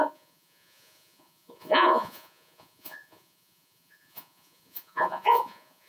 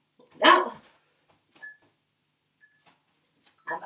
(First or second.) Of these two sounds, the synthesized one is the first